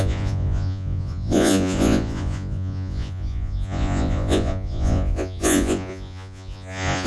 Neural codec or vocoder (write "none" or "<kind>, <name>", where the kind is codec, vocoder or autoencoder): vocoder, Vocos